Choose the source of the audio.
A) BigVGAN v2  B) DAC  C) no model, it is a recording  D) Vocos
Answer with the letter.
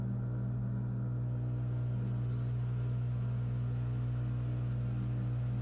C